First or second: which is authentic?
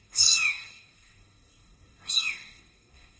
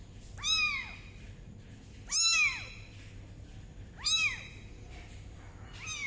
second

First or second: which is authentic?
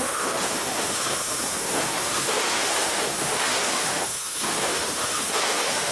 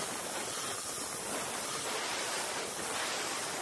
second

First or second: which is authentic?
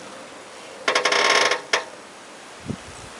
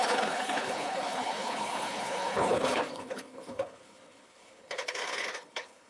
first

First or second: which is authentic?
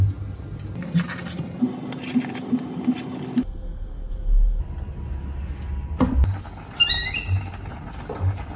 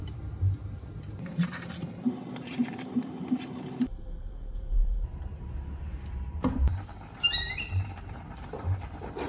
first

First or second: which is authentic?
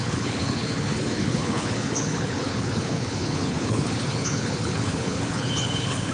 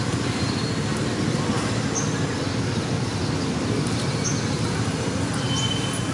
second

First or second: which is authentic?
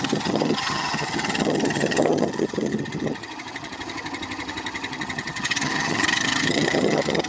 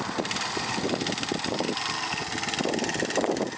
second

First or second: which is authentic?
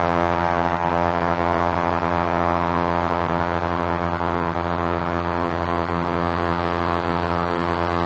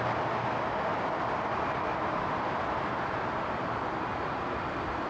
second